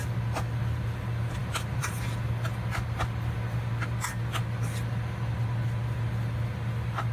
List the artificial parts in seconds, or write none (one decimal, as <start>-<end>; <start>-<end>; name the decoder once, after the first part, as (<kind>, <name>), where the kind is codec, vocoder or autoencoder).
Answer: 1.4-1.9 (vocoder, BigVGAN v2)